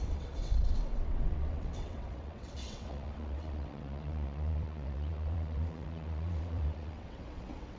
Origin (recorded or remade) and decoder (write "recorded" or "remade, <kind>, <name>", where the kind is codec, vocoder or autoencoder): remade, vocoder, WaveNeXt